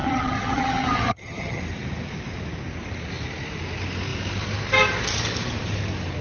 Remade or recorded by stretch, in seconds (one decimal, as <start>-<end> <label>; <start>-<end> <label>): 0.0-1.6 remade; 1.6-6.2 recorded